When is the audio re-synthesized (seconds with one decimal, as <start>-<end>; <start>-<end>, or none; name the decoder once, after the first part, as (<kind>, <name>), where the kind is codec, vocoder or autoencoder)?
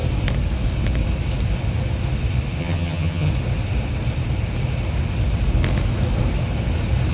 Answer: 2.6-3.3 (vocoder, HiFi-GAN)